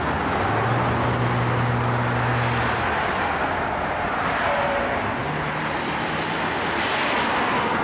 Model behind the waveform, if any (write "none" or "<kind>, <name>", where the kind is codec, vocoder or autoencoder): none